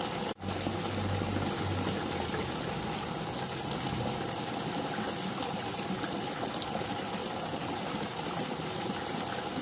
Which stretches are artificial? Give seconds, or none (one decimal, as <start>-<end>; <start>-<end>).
7.2-8.6